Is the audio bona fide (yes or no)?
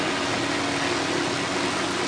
yes